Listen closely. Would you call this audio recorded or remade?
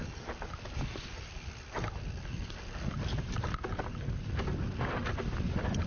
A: recorded